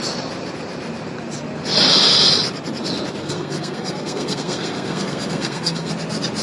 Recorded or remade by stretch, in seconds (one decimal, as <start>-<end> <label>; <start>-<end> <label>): 0.0-3.2 recorded; 3.2-5.9 remade; 5.9-6.4 recorded